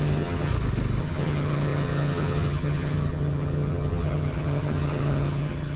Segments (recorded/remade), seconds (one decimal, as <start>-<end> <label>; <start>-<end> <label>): 0.0-0.5 remade; 0.5-1.0 recorded; 1.0-5.8 remade